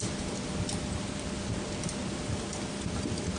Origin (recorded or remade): recorded